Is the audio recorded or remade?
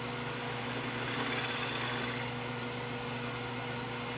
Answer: recorded